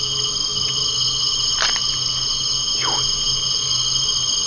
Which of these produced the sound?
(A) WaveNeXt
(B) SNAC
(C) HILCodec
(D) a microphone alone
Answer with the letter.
D